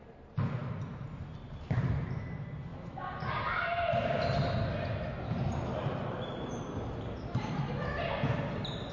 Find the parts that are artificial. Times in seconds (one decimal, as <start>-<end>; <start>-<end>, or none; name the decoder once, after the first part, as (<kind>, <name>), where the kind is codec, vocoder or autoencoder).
none